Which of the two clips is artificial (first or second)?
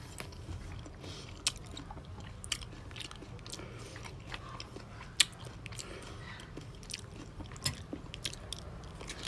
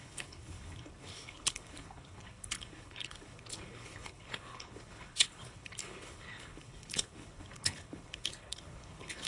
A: second